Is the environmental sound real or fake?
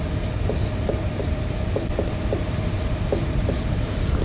real